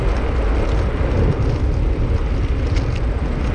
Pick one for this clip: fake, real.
real